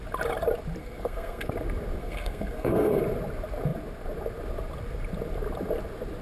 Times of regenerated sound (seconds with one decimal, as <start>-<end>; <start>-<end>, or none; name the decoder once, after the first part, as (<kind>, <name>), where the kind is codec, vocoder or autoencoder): 0.8-1.5 (codec, SNAC); 2.0-3.0